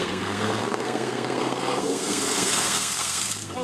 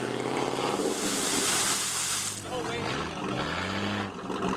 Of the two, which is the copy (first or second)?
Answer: first